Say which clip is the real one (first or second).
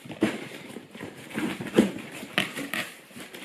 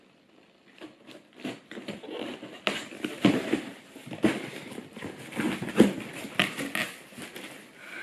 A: second